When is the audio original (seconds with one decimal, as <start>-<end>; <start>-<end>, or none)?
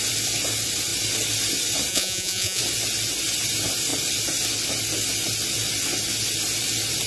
0.0-1.9; 2.6-7.1